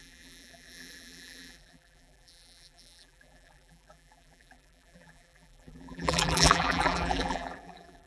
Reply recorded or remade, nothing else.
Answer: remade